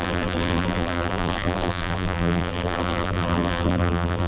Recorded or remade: remade